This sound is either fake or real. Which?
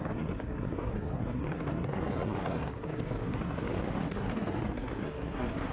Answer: fake